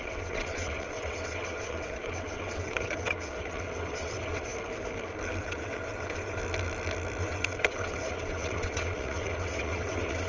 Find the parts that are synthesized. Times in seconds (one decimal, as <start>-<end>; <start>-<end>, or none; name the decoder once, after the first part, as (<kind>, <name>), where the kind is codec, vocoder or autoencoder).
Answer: 0.0-4.5 (vocoder, WaveNeXt); 5.4-6.4; 7.2-10.3